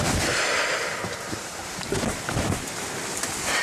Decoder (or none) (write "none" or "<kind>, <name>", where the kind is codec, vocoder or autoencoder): none